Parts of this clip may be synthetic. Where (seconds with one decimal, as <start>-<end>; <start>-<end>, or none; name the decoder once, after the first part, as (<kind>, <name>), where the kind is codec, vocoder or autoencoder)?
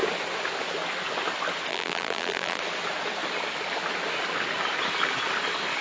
1.7-2.6 (vocoder, BigVGAN v2)